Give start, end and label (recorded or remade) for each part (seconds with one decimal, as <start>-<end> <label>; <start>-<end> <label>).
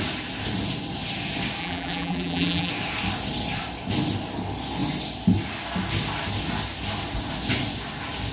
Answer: 0.0-1.6 recorded; 1.6-2.7 remade; 2.7-8.3 recorded